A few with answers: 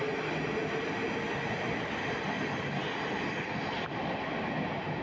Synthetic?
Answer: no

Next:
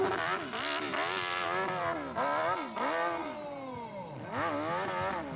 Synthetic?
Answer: no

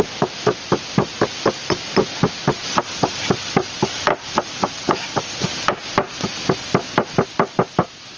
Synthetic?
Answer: no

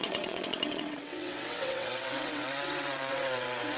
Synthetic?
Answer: yes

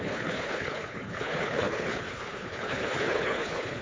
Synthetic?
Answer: yes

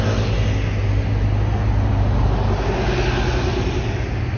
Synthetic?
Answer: no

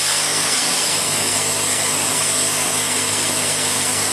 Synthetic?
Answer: yes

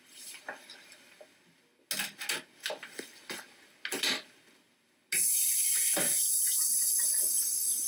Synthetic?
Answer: no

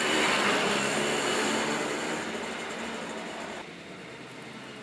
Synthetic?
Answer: no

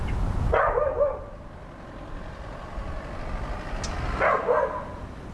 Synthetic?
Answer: no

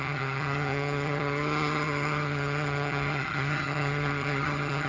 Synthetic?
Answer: yes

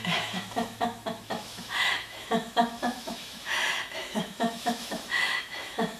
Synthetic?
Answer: yes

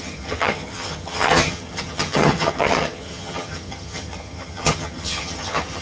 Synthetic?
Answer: yes